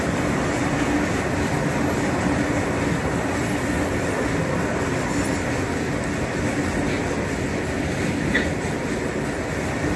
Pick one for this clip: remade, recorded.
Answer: recorded